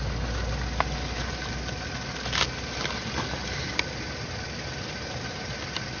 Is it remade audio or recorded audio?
recorded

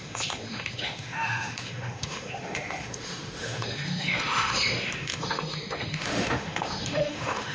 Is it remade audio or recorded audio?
remade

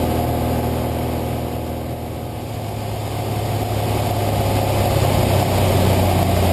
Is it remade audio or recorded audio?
recorded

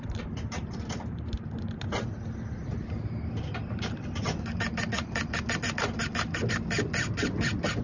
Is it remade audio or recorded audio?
recorded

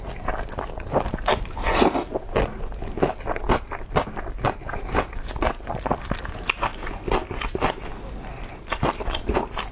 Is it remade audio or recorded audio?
recorded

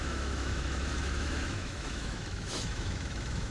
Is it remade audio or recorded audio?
remade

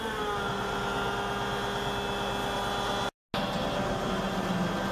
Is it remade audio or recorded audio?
recorded